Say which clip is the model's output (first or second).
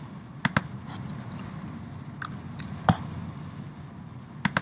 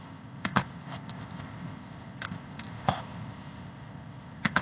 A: second